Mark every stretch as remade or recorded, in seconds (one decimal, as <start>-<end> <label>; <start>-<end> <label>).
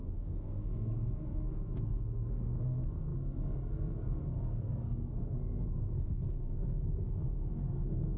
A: 0.0-8.2 remade